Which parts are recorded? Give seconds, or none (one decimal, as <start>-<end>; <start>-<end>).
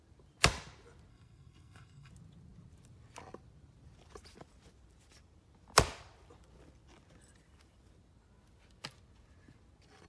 0.0-1.1; 2.1-10.1